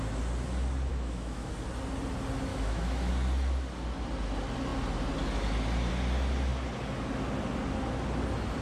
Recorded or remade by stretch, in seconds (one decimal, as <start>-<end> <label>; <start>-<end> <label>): 0.0-0.9 recorded; 0.9-1.5 remade; 1.5-2.5 recorded; 2.5-3.1 remade; 3.1-8.6 recorded

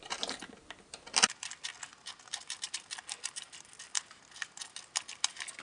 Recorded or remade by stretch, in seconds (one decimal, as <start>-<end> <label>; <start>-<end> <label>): 0.0-5.6 recorded

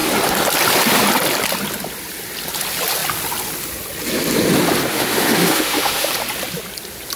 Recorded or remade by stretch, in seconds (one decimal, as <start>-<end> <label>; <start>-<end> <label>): 0.0-4.9 recorded; 4.9-6.1 remade; 6.1-7.2 recorded

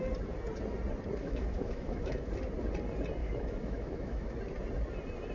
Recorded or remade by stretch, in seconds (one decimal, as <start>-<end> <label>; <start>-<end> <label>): 0.0-1.2 recorded; 1.2-2.3 remade; 2.3-3.2 recorded; 3.2-4.4 remade; 4.4-5.3 recorded